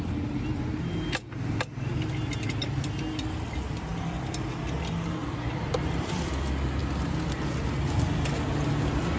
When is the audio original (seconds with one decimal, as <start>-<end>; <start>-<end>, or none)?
0.0-5.2; 6.3-9.2